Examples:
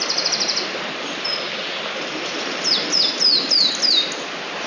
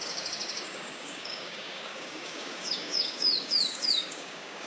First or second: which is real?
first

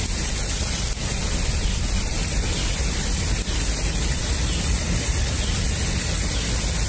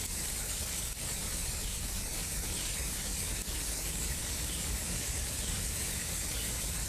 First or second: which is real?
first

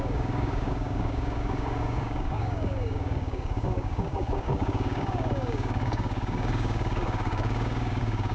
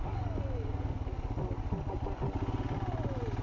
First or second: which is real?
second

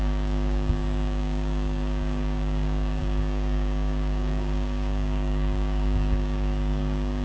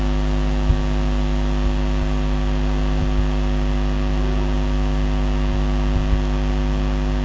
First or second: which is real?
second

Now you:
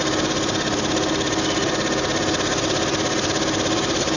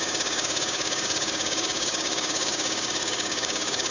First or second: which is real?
first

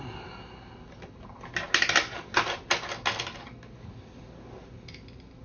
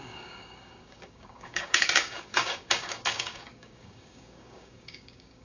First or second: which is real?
first